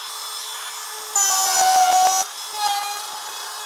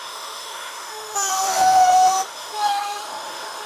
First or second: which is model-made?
second